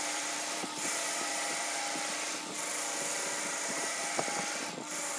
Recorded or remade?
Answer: remade